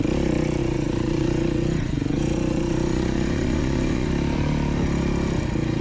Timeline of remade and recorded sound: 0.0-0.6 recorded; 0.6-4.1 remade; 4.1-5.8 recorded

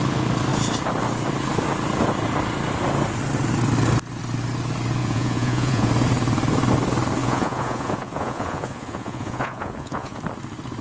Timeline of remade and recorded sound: 0.0-5.0 recorded; 5.0-5.9 remade; 5.9-7.2 recorded; 7.2-10.2 remade; 10.2-10.8 recorded

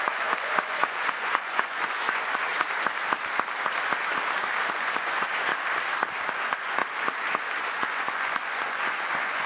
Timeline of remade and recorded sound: 0.0-2.5 remade; 2.5-4.7 recorded; 4.7-5.5 remade; 5.5-6.3 recorded; 6.3-6.8 remade; 6.8-7.6 recorded; 7.6-9.5 remade

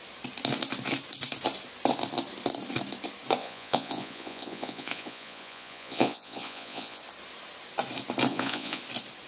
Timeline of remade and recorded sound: 0.0-3.4 recorded; 3.4-7.0 remade; 7.0-8.3 recorded; 8.3-8.8 remade; 8.8-9.3 recorded

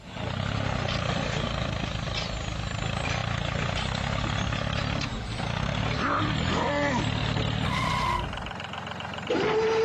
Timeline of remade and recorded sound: 0.0-9.8 recorded